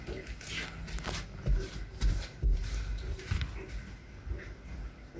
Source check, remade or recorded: recorded